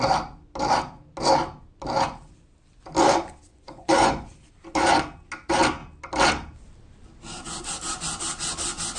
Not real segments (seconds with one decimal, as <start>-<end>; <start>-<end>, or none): 3.5-4.3